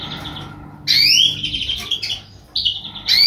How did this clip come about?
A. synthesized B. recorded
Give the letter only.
B